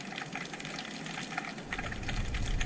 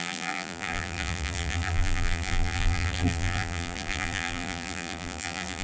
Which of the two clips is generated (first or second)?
second